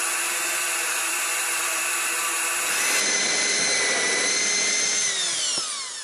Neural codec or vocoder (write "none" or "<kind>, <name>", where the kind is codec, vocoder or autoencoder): vocoder, BigVGAN v2